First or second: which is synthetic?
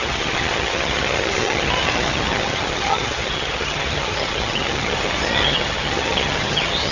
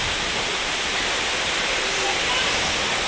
first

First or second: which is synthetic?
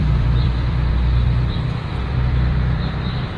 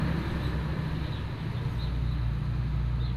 first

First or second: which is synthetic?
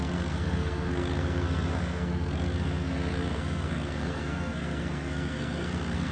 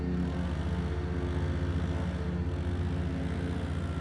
first